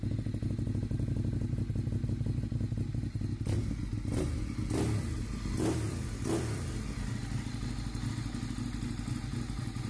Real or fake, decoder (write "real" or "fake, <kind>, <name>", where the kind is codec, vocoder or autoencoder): real